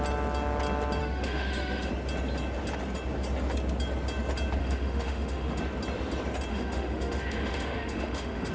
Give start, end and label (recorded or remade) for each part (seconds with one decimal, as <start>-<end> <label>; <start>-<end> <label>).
0.0-1.0 recorded; 1.0-1.9 remade; 1.9-4.6 recorded; 4.6-5.6 remade; 5.6-6.5 recorded; 6.5-8.5 remade